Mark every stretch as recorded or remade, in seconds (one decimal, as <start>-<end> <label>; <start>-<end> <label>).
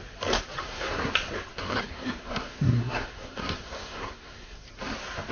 0.0-0.6 recorded; 0.6-1.1 remade; 1.1-1.5 recorded; 1.5-4.7 remade; 4.7-5.3 recorded